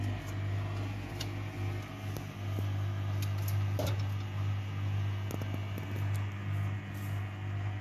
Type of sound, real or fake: real